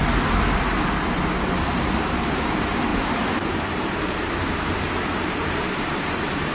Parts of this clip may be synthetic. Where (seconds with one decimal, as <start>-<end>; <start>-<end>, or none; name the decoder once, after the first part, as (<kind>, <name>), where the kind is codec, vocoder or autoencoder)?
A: 1.7-6.5 (vocoder, BigVGAN v2)